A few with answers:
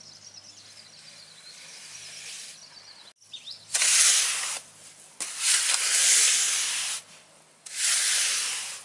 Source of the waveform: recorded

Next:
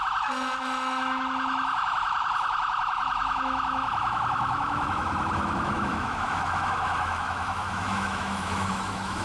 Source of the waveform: remade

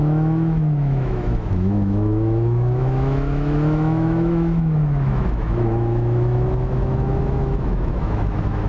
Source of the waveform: remade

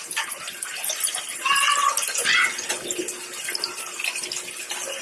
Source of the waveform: recorded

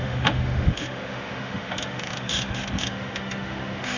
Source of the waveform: remade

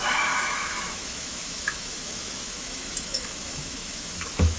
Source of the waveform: remade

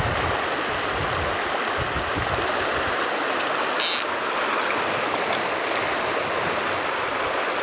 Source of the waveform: recorded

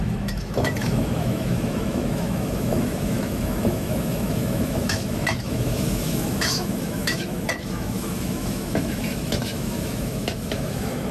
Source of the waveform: remade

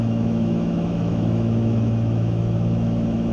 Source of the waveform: remade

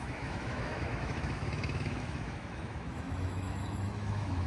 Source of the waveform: remade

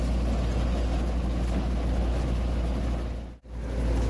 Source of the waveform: recorded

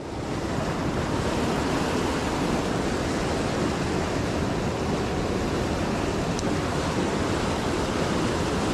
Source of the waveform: recorded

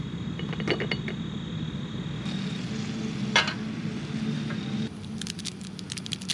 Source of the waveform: recorded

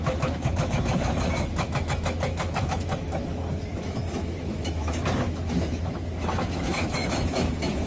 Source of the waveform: remade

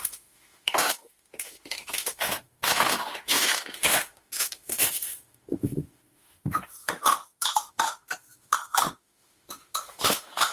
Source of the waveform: remade